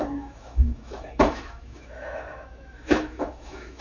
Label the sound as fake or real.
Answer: fake